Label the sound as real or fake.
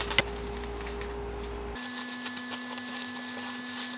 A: real